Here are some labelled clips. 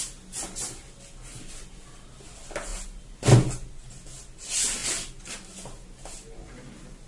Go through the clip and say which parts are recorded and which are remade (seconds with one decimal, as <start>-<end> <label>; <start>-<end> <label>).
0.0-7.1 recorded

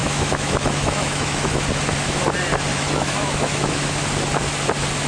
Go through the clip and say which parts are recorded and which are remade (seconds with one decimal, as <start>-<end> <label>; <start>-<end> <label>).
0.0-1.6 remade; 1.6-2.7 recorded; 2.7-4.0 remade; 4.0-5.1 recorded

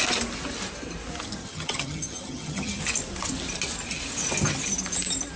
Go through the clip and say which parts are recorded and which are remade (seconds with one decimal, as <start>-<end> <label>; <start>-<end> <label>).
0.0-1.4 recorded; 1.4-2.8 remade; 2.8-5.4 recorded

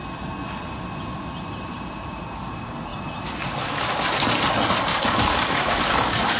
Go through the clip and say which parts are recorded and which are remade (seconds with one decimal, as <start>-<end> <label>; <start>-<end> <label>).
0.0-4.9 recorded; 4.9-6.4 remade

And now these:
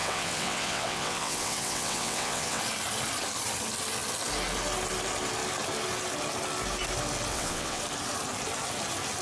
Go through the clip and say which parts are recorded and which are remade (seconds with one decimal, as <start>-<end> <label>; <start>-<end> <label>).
0.0-2.6 remade; 2.6-7.3 recorded; 7.3-7.8 remade; 7.8-9.2 recorded

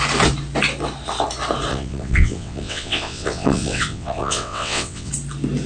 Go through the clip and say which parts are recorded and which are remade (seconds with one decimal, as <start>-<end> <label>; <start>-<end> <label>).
0.0-1.7 recorded; 1.7-5.1 remade; 5.1-5.7 recorded